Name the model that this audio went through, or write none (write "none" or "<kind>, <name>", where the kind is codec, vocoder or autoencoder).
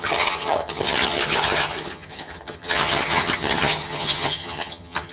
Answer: vocoder, HiFi-GAN